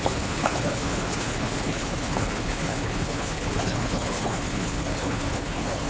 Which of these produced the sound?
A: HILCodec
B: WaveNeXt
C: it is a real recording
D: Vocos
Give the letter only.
A